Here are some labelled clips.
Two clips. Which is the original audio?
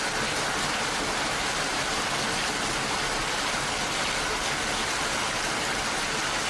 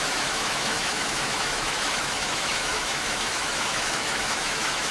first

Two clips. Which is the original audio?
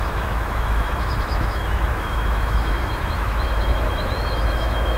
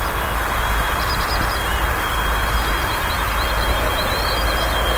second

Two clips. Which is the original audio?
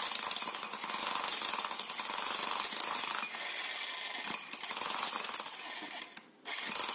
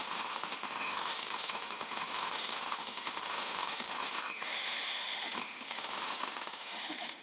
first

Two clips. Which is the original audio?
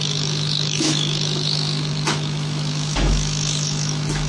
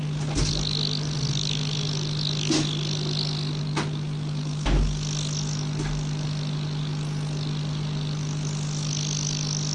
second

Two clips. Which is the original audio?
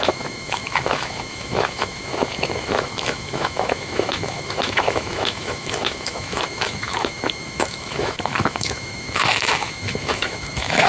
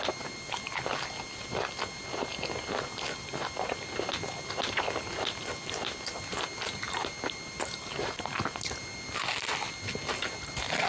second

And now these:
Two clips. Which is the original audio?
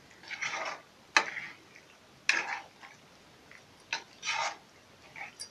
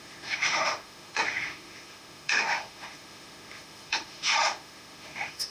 first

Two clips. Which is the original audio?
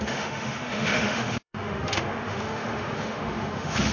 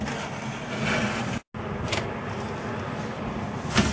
second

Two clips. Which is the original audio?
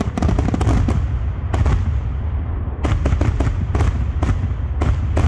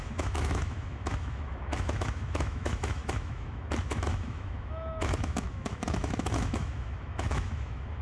first